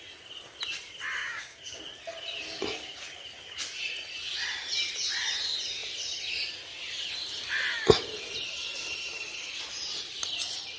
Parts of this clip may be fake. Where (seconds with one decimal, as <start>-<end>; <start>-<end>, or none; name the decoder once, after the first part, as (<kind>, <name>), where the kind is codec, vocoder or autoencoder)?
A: 1.2-1.8 (codec, DAC)

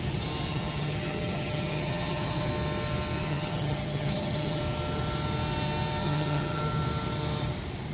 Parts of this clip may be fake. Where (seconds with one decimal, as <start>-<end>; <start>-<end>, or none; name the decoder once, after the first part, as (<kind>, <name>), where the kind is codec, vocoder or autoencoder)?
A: 0.5-2.5 (vocoder, HiFi-GAN); 3.2-4.6; 6.0-6.6